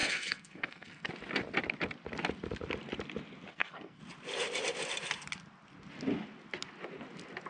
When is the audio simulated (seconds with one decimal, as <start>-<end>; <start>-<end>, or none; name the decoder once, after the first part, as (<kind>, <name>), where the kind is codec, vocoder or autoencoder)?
0.0-1.1 (codec, SNAC); 3.5-4.0